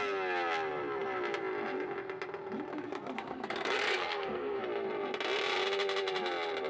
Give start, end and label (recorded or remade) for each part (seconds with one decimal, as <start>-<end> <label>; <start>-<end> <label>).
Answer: 0.0-2.7 recorded; 2.7-4.6 remade; 4.6-6.7 recorded